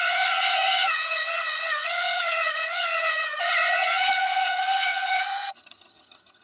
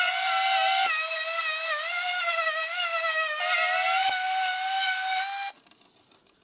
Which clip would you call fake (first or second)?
first